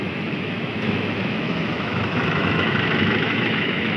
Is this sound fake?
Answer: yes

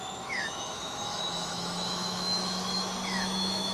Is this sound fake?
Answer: yes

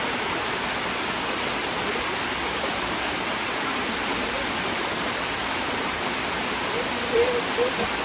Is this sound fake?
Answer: no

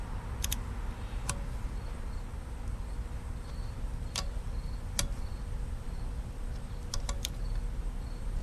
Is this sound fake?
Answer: no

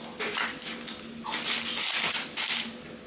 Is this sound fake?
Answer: no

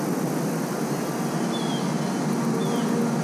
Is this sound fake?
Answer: no